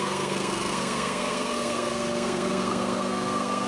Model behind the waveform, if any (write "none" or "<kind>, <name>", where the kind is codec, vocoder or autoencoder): codec, SNAC